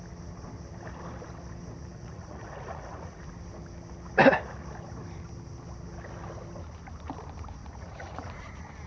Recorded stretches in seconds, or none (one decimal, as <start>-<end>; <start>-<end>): 0.0-1.9; 3.2-7.6; 8.5-8.9